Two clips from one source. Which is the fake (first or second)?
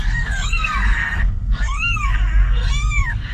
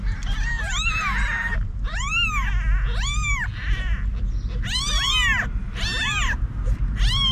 first